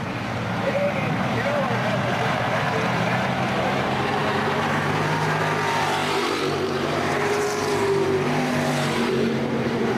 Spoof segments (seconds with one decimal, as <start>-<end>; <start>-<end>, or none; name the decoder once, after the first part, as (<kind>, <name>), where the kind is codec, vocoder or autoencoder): 0.0-10.0 (vocoder, BigVGAN v2)